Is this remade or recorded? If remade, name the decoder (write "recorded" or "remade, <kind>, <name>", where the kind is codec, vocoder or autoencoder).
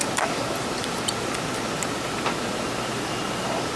recorded